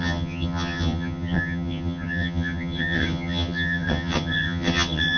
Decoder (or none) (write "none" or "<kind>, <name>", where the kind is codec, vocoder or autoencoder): vocoder, HiFi-GAN